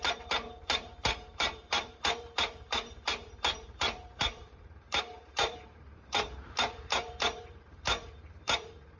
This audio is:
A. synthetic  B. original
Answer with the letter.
A